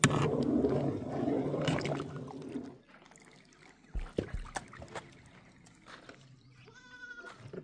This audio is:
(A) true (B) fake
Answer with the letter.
A